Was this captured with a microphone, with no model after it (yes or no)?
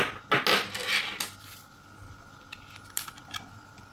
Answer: yes